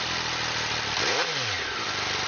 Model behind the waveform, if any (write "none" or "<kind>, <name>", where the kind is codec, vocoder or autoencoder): none